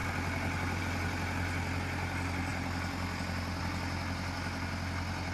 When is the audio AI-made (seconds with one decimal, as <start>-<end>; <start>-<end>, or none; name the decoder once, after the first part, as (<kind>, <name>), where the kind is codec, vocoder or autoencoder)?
none